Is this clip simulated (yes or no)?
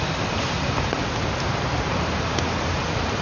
no